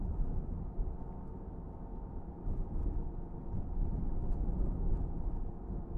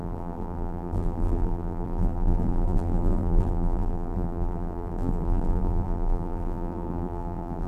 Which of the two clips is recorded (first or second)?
first